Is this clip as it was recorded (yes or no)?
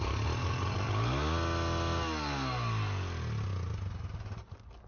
yes